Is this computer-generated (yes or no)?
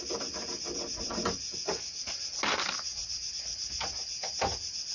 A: no